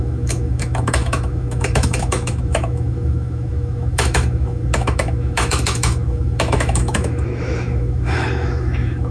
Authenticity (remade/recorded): remade